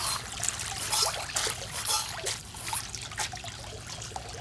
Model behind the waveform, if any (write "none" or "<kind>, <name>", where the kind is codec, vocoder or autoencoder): none